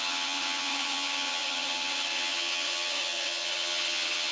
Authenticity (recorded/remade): remade